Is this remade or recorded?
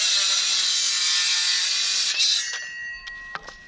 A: recorded